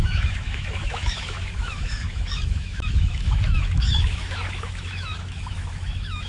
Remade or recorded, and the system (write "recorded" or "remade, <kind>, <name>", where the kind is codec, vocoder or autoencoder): remade, autoencoder, DAC-VAE